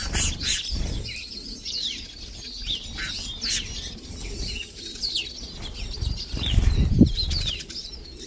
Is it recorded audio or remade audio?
recorded